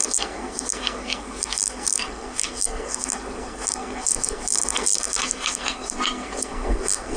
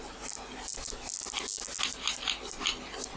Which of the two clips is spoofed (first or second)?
first